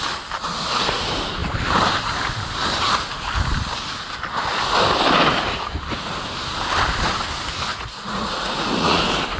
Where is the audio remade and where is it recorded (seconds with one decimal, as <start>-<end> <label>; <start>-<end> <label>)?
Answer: 0.0-7.7 recorded; 7.7-9.0 remade; 9.0-9.4 recorded